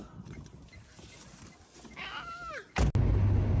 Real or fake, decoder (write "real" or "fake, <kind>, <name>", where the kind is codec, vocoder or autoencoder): real